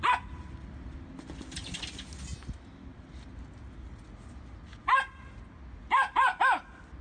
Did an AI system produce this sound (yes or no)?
no